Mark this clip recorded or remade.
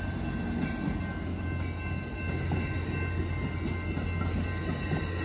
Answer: recorded